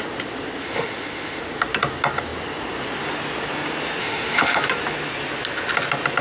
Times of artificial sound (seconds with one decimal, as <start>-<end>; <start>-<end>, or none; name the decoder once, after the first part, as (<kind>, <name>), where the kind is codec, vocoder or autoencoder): 0.6-1.4 (autoencoder, DAC-VAE); 4.0-4.6